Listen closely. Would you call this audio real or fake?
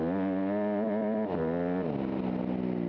real